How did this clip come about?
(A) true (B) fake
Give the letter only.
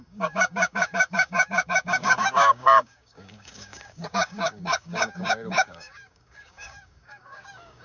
B